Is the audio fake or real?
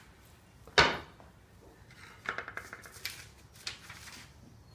real